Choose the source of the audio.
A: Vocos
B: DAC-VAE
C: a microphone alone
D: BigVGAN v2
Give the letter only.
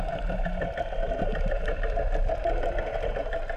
C